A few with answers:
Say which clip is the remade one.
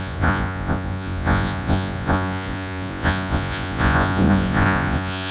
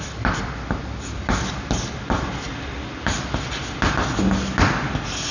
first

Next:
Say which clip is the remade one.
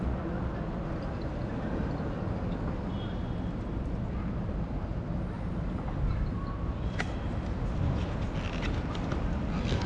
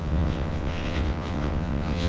second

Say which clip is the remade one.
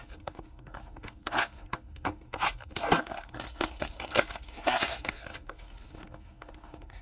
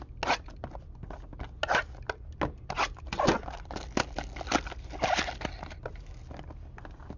first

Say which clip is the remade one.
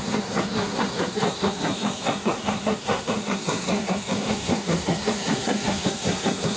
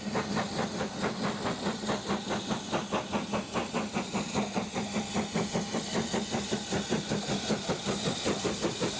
first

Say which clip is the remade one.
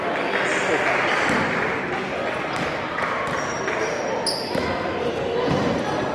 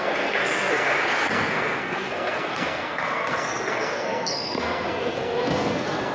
second